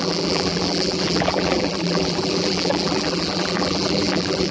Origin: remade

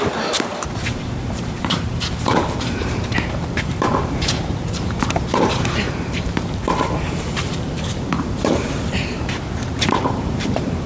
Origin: remade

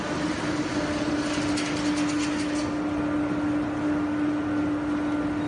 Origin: recorded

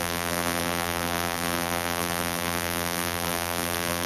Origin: remade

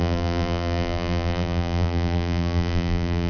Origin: remade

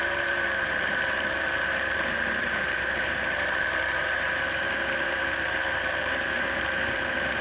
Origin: remade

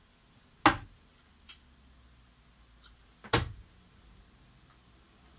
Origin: recorded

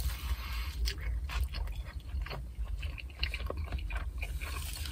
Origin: recorded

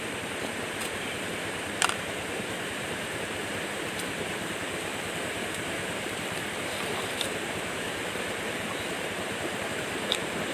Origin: remade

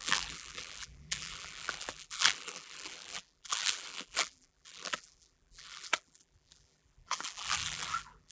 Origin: remade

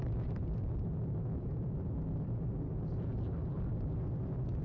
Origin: remade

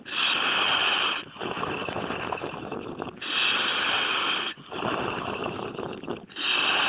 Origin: recorded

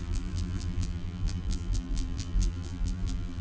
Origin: remade